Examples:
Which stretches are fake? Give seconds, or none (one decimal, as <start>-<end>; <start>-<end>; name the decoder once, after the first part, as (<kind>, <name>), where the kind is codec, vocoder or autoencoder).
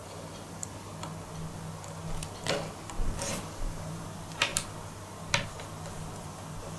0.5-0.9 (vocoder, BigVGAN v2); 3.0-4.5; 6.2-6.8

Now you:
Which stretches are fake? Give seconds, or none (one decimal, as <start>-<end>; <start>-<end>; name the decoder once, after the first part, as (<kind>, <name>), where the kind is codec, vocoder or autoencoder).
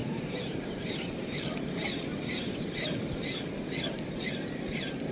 0.0-1.9 (vocoder, BigVGAN v2)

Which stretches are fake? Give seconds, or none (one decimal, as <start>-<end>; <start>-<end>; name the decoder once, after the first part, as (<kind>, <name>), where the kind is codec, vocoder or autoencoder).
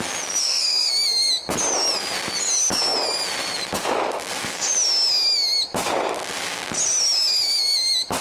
0.4-0.9 (codec, SNAC)